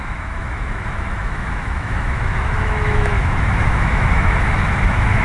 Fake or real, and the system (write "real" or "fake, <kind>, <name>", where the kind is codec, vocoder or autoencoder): fake, autoencoder, DAC-VAE